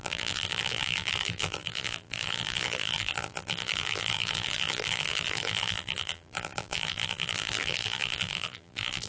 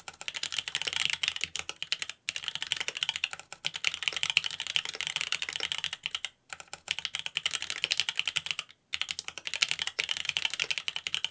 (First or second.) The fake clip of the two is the first